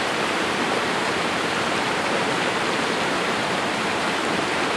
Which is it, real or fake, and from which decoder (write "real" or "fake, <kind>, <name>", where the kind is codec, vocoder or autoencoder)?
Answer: fake, vocoder, BigVGAN v2